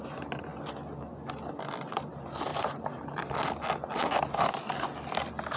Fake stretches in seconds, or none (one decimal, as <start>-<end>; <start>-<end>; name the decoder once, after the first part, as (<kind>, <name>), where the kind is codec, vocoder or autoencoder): 2.5-3.4 (vocoder, BigVGAN v2)